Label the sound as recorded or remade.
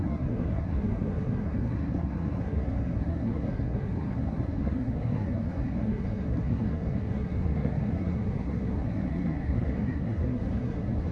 remade